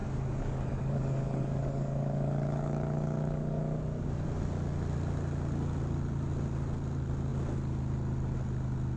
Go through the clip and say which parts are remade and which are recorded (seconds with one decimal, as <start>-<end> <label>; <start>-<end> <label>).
0.0-3.6 remade; 3.6-9.0 recorded